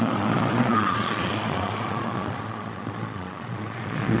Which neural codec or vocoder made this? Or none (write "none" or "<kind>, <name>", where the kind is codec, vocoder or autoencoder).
vocoder, Vocos